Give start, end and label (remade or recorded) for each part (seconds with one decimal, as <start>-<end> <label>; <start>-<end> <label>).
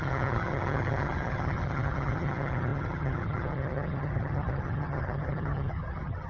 0.0-6.3 remade